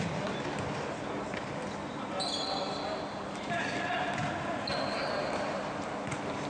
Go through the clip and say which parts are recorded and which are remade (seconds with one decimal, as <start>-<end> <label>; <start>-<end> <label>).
0.0-6.5 recorded